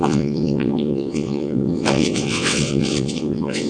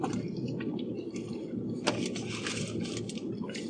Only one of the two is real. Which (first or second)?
second